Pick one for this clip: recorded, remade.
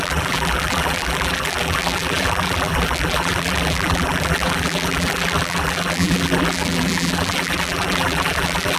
remade